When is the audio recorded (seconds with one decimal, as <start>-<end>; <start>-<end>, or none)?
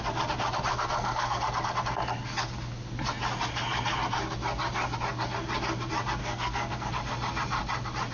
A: 0.0-0.7; 1.4-6.2; 6.9-8.1